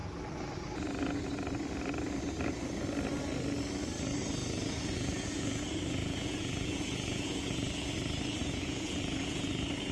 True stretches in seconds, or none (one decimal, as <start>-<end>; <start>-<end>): 0.0-4.4; 5.6-6.0; 7.9-8.4; 9.5-9.9